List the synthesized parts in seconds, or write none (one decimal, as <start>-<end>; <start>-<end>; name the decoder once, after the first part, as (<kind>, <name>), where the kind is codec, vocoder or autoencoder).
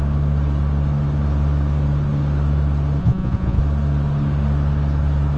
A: 3.0-3.6 (vocoder, Vocos)